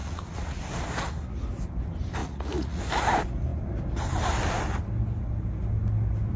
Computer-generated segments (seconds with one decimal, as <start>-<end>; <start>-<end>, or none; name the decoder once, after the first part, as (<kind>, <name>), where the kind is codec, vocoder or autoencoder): 0.0-0.6 (vocoder, Vocos); 2.2-2.8

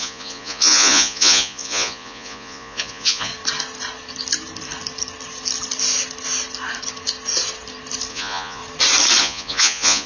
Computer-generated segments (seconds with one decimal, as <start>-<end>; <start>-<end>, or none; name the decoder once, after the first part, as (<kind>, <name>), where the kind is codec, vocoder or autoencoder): 0.0-3.3 (vocoder, Vocos); 8.1-8.6; 9.2-10.1

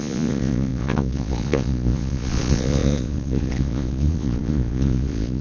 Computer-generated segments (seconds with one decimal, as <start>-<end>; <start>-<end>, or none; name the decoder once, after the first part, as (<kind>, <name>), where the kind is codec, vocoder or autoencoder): 0.0-5.4 (vocoder, Vocos)

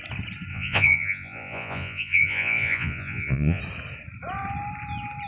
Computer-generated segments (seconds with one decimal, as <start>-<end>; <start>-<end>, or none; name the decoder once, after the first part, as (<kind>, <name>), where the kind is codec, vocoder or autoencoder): 0.5-3.6 (vocoder, Vocos)

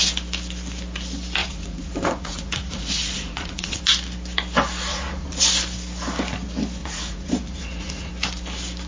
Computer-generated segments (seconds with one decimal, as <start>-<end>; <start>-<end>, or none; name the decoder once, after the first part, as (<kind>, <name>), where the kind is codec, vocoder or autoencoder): 1.4-3.8 (vocoder, Vocos); 4.9-5.4; 6.8-8.1